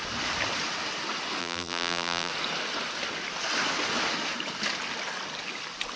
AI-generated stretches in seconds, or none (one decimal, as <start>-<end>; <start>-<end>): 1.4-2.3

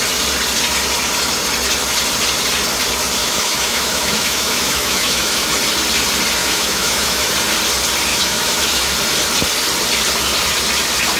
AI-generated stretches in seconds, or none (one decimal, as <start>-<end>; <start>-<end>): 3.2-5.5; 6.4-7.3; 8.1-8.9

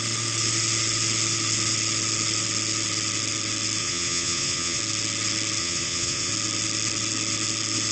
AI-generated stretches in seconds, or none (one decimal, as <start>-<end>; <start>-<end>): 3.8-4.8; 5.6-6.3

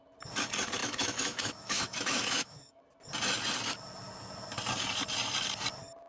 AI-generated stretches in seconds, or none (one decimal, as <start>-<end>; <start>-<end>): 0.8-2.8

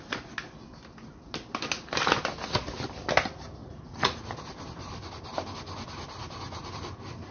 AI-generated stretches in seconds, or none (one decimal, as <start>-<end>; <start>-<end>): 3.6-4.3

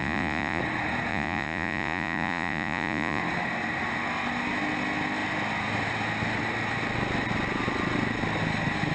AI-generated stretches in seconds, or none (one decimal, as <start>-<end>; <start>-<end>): 0.0-0.6; 1.1-3.2

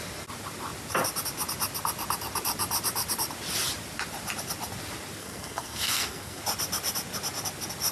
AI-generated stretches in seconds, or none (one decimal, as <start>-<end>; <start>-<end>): 5.2-6.4

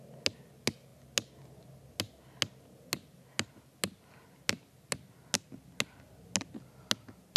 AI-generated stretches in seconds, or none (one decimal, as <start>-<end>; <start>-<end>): none